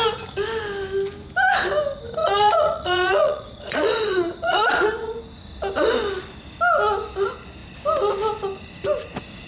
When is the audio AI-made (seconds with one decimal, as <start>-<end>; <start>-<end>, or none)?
2.2-5.2